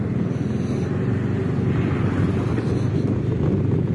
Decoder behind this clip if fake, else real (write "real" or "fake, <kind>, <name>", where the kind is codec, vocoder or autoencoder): real